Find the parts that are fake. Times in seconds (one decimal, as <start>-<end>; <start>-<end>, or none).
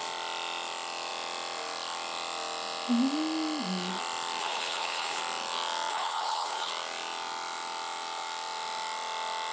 4.4-5.2; 5.9-6.7